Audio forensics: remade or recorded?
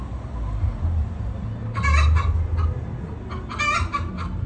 recorded